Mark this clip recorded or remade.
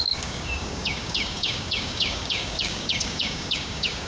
remade